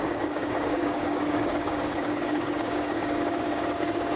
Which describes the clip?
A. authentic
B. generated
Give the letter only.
B